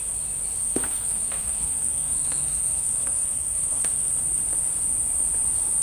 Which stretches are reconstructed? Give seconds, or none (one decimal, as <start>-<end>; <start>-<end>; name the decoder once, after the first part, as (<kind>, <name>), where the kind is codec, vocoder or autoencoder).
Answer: 0.6-4.1 (codec, SNAC)